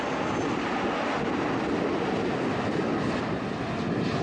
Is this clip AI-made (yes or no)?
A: no